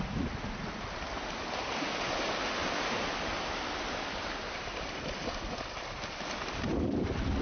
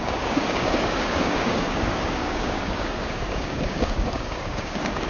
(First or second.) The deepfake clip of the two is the second